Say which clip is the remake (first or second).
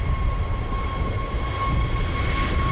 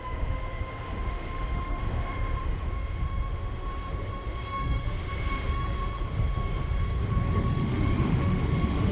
second